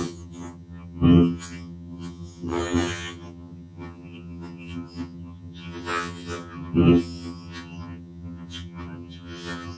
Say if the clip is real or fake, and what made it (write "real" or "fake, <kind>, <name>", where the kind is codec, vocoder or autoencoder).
fake, vocoder, HiFi-GAN